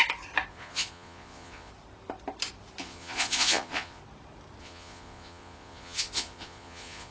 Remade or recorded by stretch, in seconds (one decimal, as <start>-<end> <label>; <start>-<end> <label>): 0.0-0.5 recorded; 0.5-1.7 remade; 1.7-2.8 recorded; 2.8-4.0 remade; 4.0-4.6 recorded; 4.6-7.1 remade